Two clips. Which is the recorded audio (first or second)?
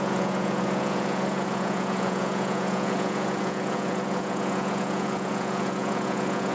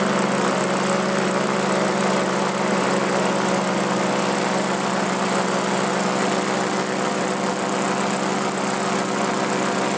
second